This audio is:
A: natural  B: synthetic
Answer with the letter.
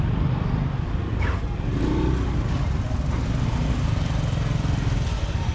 A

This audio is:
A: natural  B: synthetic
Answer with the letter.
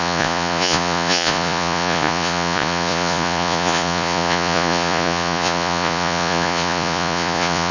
B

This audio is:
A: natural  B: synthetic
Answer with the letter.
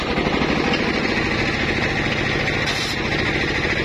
A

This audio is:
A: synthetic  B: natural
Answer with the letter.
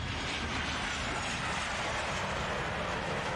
B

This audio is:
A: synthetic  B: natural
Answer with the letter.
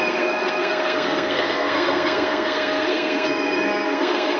A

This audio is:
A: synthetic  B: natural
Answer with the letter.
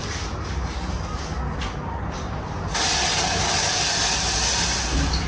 B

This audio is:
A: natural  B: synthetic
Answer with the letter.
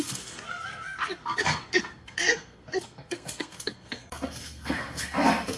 B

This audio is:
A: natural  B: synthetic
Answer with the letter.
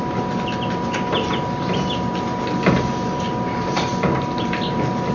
A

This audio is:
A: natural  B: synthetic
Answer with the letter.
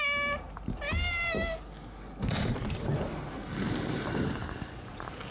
A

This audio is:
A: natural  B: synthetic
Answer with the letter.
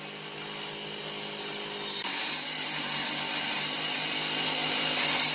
A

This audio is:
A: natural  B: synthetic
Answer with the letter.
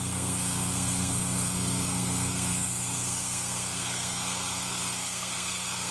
B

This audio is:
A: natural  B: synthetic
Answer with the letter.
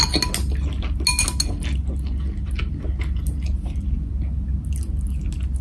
A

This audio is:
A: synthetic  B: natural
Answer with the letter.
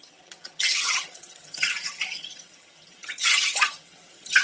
A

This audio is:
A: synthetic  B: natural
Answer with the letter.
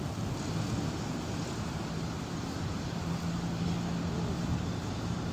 B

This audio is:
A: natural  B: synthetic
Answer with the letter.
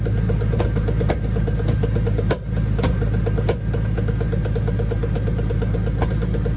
A